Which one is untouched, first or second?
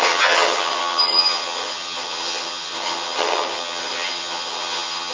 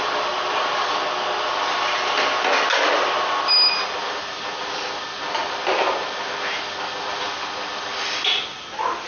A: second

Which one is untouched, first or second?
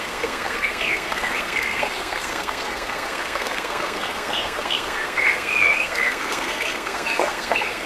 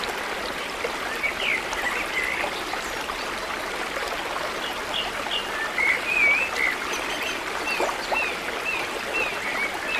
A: second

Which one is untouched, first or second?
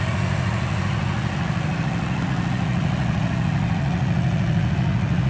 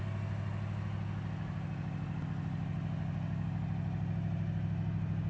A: second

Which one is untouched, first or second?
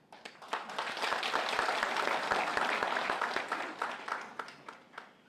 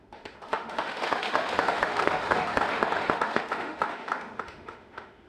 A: first